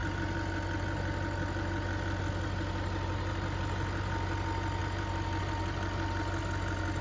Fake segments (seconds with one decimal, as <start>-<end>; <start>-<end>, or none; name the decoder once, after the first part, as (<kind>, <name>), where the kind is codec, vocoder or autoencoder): none